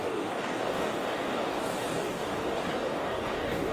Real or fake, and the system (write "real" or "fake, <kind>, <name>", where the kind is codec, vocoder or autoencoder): fake, codec, DAC